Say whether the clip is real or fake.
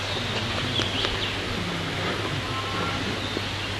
real